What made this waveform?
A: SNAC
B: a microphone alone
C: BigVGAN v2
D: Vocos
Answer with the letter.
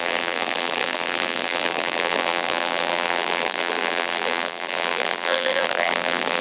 C